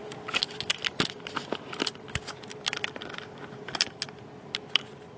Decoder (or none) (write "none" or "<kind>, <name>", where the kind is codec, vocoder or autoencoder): none